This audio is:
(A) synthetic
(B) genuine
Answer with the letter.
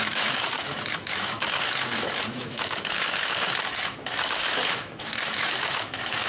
A